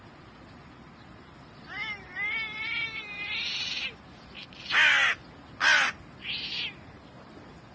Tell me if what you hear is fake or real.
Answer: real